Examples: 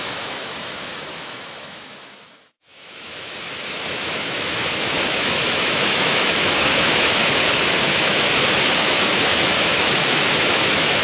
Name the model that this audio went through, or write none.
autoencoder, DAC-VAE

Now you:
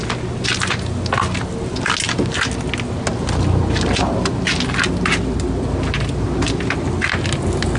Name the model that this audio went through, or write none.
none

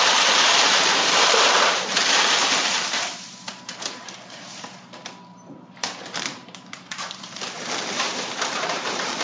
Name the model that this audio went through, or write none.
vocoder, BigVGAN v2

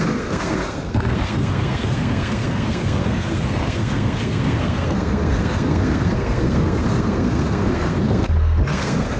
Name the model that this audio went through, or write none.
codec, SNAC